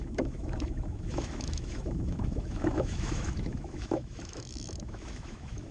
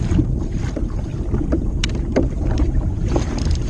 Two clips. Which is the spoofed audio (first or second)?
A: first